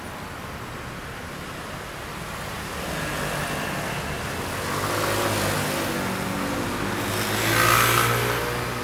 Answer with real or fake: real